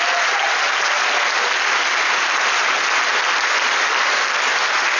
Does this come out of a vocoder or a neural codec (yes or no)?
no